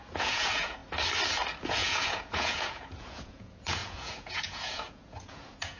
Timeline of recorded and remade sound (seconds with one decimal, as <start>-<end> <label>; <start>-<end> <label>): 0.0-0.8 remade; 0.8-1.6 recorded; 1.6-5.8 remade